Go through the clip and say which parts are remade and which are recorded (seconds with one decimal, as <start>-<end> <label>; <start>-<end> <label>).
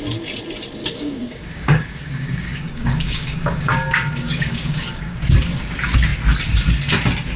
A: 0.0-0.8 recorded; 0.8-5.2 remade; 5.2-7.4 recorded